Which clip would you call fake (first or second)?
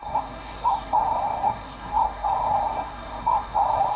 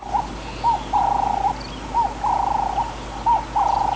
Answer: first